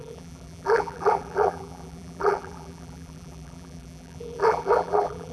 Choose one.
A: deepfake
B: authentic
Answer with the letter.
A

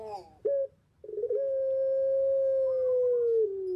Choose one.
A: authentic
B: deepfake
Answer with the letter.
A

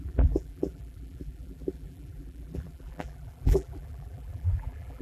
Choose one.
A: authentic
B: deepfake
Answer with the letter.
B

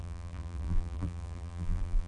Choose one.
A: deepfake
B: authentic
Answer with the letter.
A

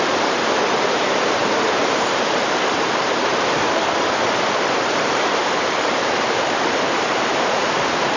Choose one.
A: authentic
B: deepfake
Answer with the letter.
B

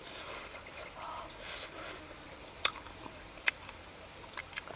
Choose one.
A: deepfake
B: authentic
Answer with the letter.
A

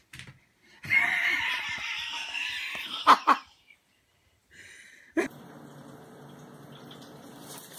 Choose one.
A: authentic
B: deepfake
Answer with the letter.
B